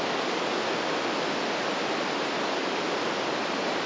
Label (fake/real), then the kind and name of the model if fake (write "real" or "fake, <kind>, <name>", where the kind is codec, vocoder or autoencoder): real